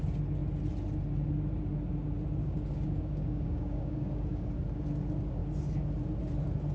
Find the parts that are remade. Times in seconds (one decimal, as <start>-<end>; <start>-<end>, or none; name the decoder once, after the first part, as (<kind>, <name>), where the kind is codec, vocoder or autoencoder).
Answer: 2.4-4.5 (codec, DAC)